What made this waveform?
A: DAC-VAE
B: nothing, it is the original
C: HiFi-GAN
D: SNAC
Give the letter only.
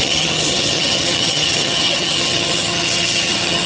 C